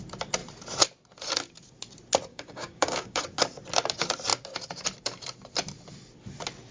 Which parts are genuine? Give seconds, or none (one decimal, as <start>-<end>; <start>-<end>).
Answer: 0.0-2.3; 3.2-6.7